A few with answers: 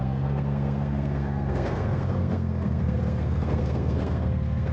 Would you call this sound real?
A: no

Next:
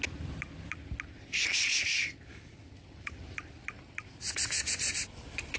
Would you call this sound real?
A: yes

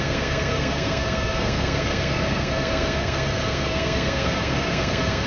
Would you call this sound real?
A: no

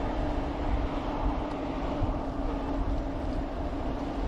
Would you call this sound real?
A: yes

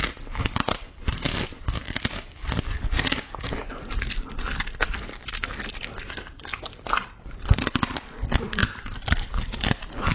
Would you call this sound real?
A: yes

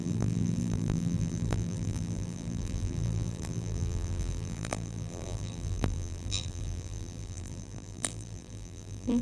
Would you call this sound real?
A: no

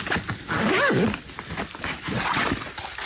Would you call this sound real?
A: yes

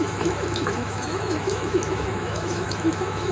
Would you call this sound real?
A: no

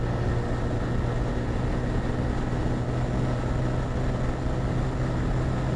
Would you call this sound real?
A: yes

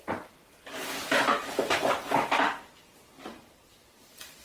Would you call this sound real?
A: no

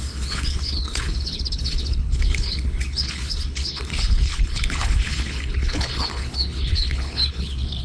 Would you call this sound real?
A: no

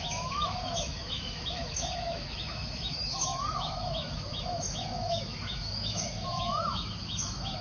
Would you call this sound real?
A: no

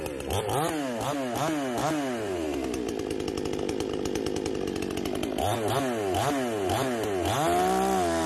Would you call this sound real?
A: yes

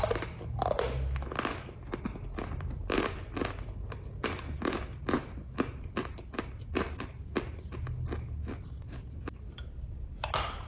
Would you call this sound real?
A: yes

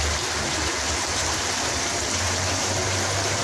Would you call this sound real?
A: yes